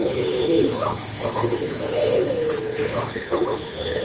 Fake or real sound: fake